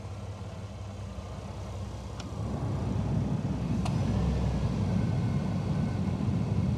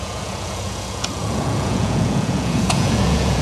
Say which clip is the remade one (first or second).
second